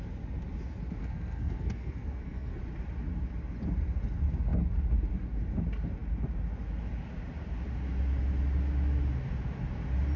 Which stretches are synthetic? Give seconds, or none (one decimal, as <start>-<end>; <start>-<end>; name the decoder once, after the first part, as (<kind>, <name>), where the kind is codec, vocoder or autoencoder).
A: 1.0-2.6 (codec, SNAC)